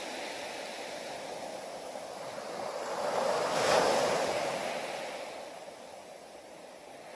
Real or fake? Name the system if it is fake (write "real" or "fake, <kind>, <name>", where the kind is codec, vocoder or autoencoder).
real